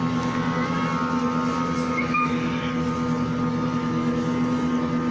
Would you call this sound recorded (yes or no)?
yes